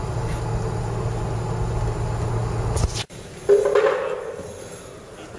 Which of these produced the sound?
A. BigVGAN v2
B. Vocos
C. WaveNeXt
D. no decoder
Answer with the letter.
D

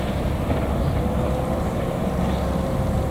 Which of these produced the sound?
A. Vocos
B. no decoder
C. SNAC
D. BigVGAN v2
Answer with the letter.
B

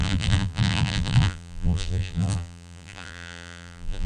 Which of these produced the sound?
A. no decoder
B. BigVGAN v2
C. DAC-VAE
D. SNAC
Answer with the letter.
B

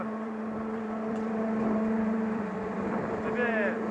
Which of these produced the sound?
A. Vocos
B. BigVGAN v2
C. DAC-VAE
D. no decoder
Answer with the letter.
B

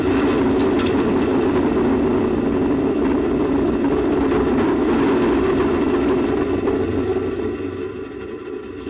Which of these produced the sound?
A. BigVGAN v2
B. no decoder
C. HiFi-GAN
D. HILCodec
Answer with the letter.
A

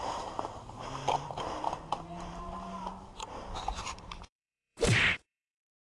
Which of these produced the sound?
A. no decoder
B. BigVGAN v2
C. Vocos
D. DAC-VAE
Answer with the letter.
B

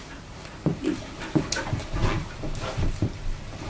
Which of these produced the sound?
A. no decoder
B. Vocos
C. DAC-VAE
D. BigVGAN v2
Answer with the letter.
A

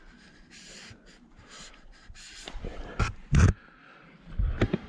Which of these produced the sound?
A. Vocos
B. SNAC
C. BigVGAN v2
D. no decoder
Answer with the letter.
C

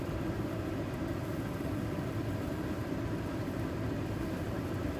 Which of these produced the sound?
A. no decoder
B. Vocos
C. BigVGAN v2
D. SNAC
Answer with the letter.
C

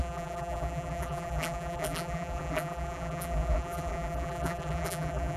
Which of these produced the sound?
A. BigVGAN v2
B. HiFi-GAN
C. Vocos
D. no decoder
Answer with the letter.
A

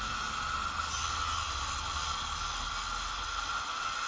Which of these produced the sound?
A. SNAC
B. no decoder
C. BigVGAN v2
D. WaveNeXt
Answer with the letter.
B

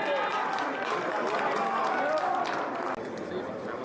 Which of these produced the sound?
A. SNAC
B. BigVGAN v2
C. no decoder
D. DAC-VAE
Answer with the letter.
C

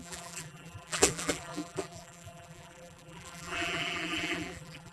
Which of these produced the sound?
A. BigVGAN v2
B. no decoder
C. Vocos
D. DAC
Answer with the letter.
A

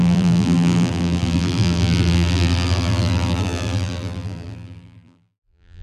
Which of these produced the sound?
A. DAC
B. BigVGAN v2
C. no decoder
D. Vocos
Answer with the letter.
B